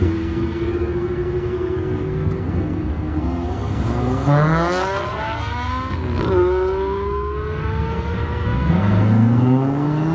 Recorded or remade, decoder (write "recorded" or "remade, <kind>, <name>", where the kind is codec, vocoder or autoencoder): remade, codec, SNAC